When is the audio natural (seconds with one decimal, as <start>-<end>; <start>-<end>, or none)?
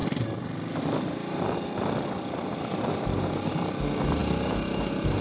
0.0-5.2